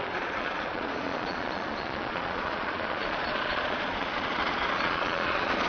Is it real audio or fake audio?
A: fake